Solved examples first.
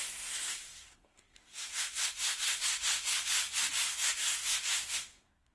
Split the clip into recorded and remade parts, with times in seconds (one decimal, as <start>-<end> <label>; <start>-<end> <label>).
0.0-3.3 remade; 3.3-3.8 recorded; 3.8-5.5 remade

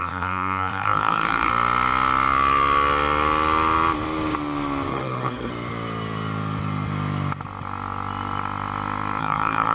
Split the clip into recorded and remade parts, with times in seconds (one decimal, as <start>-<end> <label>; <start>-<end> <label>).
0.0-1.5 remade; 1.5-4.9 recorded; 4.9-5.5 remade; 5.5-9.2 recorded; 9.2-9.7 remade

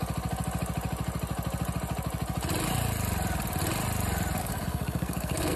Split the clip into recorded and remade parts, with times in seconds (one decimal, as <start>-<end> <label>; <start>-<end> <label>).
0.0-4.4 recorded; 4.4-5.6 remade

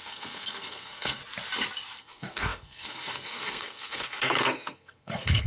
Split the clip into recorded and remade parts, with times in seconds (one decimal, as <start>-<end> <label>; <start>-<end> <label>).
0.0-1.2 remade; 1.2-2.0 recorded; 2.0-5.5 remade

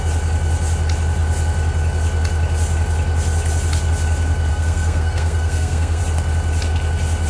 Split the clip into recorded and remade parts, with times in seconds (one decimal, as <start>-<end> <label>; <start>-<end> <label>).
0.0-4.5 recorded; 4.5-6.0 remade; 6.0-7.3 recorded

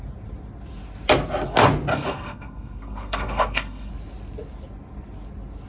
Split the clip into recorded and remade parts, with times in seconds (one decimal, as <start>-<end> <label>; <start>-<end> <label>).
0.0-1.9 recorded; 1.9-3.9 remade; 3.9-5.7 recorded

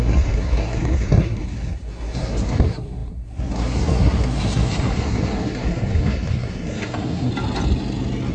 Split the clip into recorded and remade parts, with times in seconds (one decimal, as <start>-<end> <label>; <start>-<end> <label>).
0.0-7.3 remade; 7.3-8.3 recorded